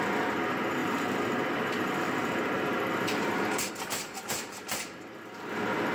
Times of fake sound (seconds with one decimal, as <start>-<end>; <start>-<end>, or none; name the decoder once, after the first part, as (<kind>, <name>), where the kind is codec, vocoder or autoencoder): 0.8-3.7 (vocoder, BigVGAN v2)